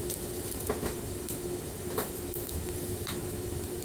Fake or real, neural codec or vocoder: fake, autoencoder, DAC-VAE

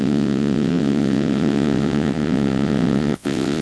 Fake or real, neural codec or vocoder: fake, vocoder, WaveNeXt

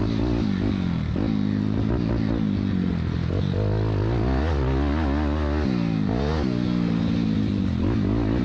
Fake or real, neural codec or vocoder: real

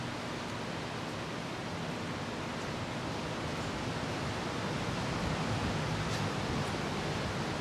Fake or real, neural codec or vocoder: real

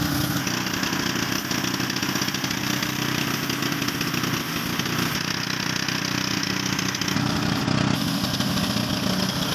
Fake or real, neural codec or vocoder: real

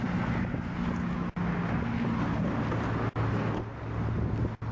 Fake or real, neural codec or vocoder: real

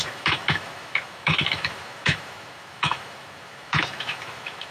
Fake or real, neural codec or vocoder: fake, autoencoder, DAC-VAE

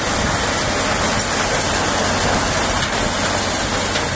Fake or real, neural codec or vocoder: real